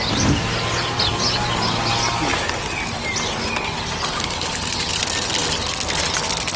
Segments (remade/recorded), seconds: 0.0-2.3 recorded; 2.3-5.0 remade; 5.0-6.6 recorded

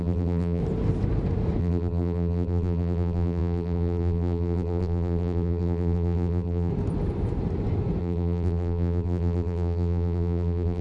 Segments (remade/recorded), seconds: 0.0-0.6 remade; 0.6-1.6 recorded; 1.6-6.7 remade; 6.7-8.0 recorded; 8.0-10.8 remade

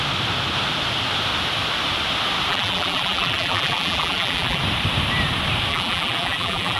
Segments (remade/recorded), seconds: 0.0-2.5 recorded; 2.5-4.6 remade; 4.6-5.7 recorded; 5.7-6.8 remade

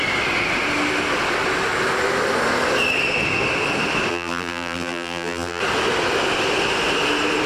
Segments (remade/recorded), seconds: 0.0-4.1 recorded; 4.1-5.6 remade; 5.6-7.5 recorded

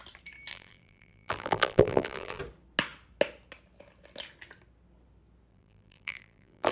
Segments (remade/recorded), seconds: 0.0-0.5 recorded; 0.5-2.4 remade; 2.4-5.5 recorded; 5.5-6.7 remade

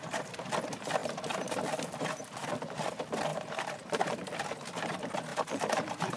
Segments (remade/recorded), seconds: 0.0-3.3 recorded; 3.3-4.3 remade; 4.3-5.3 recorded; 5.3-6.2 remade

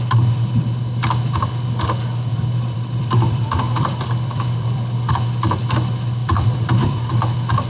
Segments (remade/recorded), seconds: 0.0-2.3 recorded; 2.3-5.1 remade; 5.1-6.2 recorded; 6.2-7.1 remade; 7.1-7.7 recorded

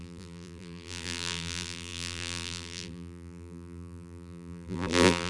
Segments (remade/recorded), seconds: 0.0-5.3 remade